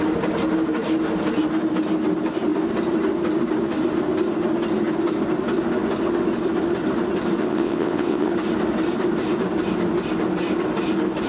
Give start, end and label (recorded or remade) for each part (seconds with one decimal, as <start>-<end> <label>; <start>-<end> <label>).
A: 0.0-7.4 recorded; 7.4-8.3 remade; 8.3-11.3 recorded